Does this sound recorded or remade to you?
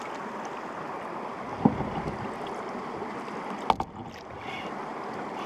recorded